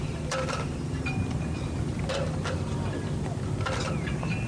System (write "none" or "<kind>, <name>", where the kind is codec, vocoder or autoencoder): none